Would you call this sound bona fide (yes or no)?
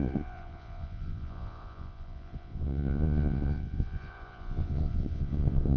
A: no